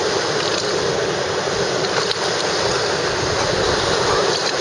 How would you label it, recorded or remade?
recorded